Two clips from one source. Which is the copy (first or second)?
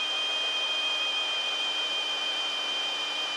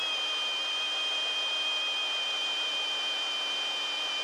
first